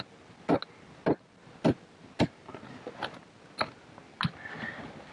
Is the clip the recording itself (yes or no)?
yes